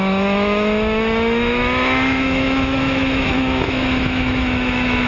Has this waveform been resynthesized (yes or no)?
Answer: yes